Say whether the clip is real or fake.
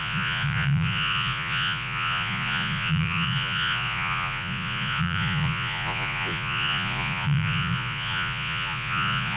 fake